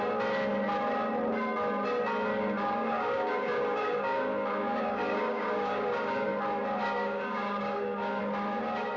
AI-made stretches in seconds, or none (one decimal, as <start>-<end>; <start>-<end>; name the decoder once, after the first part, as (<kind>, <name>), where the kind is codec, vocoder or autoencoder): 2.3-6.3 (codec, DAC); 6.8-8.2